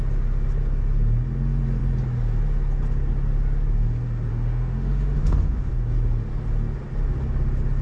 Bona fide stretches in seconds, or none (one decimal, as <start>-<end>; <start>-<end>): 0.0-4.3; 5.7-7.8